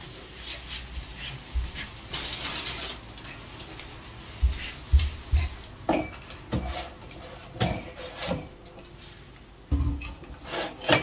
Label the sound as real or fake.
real